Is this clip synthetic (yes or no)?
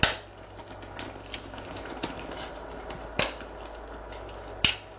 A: no